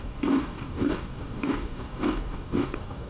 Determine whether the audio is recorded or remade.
remade